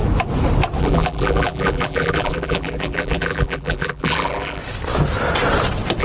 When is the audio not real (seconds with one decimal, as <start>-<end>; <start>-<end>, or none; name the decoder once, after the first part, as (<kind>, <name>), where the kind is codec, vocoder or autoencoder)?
0.8-4.6 (vocoder, BigVGAN v2)